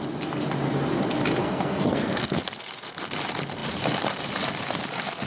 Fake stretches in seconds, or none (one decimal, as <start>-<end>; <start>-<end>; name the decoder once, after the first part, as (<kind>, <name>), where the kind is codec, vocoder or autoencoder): 1.4-2.4 (codec, SNAC)